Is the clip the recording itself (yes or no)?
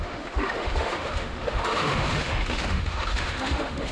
no